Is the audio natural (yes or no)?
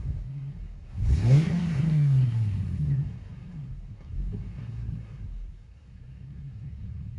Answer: no